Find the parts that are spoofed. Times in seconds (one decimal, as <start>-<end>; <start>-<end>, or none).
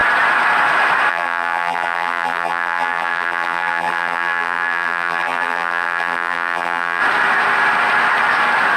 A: 1.1-7.0